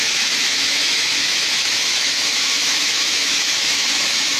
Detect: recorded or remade remade